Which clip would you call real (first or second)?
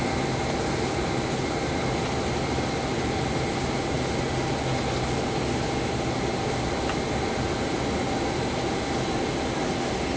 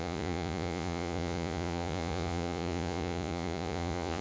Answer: first